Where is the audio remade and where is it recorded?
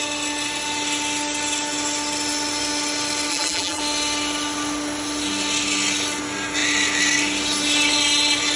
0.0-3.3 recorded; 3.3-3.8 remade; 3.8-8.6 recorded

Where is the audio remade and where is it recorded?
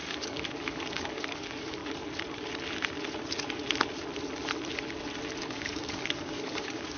0.0-1.8 remade; 1.8-5.4 recorded; 5.4-7.0 remade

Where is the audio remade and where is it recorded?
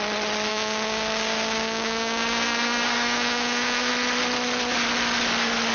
0.0-0.5 recorded; 0.5-3.9 remade; 3.9-5.7 recorded